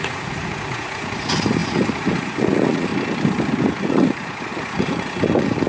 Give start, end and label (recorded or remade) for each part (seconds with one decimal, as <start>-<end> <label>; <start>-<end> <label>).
0.0-2.9 remade; 2.9-3.7 recorded; 3.7-5.7 remade